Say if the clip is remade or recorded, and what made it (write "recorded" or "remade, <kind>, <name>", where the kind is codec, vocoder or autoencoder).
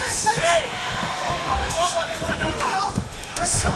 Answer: remade, autoencoder, DAC-VAE